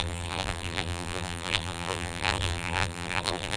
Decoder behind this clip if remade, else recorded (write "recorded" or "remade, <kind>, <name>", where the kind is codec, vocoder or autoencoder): remade, vocoder, BigVGAN v2